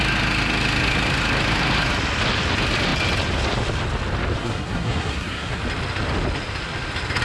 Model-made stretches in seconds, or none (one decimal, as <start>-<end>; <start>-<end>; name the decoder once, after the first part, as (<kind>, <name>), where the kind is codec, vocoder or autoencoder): 4.4-5.6 (codec, SNAC)